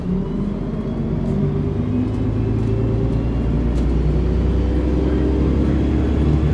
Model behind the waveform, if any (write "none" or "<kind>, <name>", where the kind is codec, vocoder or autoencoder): none